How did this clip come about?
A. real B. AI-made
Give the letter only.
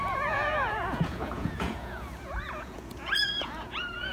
B